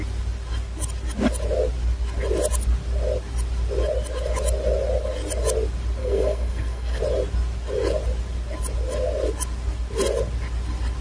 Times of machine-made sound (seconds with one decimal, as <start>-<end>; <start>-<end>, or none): 6.0-7.0